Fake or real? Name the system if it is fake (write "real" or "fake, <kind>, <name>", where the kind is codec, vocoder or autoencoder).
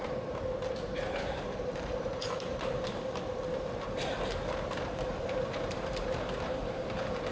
fake, vocoder, BigVGAN v2